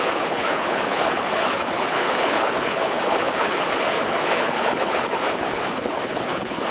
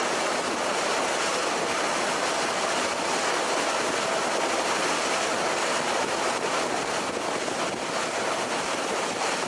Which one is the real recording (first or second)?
second